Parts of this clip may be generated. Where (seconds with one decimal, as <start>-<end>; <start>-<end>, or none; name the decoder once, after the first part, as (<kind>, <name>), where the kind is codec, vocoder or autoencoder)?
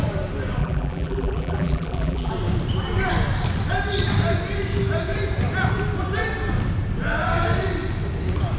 0.6-2.3 (vocoder, BigVGAN v2)